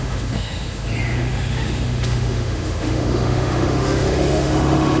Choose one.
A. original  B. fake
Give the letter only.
B